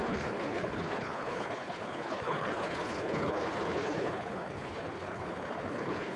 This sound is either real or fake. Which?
fake